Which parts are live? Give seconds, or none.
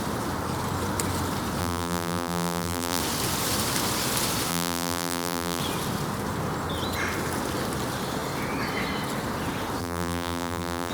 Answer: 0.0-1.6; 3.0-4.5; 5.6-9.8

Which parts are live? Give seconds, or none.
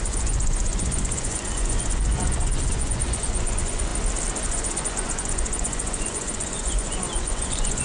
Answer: 3.9-4.4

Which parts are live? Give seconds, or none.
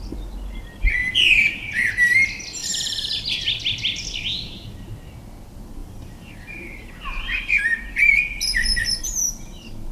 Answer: 0.0-1.0; 1.9-2.6; 3.1-5.8; 7.6-9.9